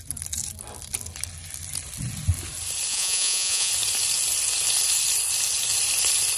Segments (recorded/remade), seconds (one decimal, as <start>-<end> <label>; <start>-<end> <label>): 0.0-2.9 recorded; 2.9-3.7 remade; 3.7-6.4 recorded